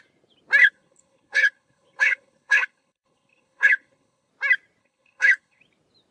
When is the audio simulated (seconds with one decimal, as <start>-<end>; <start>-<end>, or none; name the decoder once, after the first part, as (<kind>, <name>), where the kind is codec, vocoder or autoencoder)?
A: 0.6-4.3 (codec, HILCodec); 4.8-5.6